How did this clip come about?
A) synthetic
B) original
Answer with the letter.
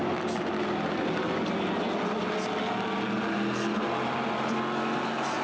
B